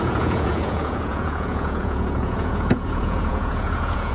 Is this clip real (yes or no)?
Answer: no